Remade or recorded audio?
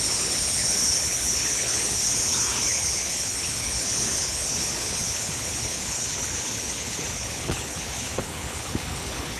remade